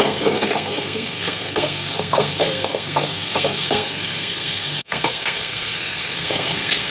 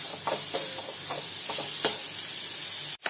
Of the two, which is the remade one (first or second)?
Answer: first